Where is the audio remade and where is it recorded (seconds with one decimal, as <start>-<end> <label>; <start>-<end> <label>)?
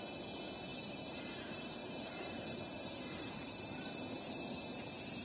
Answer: 0.0-0.7 recorded; 0.7-3.8 remade; 3.8-5.2 recorded